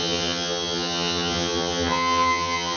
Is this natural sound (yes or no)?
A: no